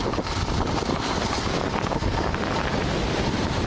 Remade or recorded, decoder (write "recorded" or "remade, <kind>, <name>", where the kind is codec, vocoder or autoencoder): recorded